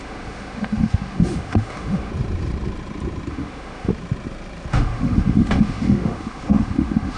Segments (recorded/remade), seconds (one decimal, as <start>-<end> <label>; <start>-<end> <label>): 0.0-2.1 remade; 2.1-3.3 recorded; 3.3-3.9 remade; 3.9-4.7 recorded; 4.7-7.2 remade